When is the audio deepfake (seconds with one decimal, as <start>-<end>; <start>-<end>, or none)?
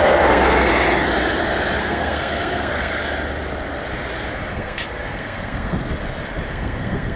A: 0.0-0.7; 1.8-3.0; 4.5-5.8; 6.5-7.2